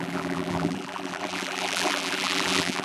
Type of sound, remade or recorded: remade